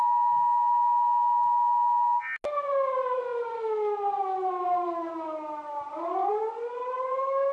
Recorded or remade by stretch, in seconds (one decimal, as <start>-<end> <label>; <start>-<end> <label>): 0.0-7.5 recorded